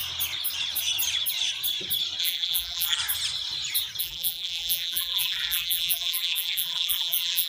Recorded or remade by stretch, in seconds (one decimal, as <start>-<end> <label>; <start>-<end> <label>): 0.0-2.2 recorded; 2.2-3.0 remade; 3.0-4.0 recorded; 4.0-7.5 remade